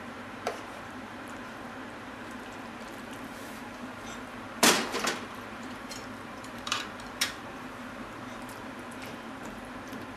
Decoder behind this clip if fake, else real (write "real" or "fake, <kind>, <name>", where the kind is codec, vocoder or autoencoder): fake, vocoder, BigVGAN v2